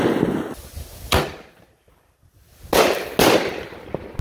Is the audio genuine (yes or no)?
yes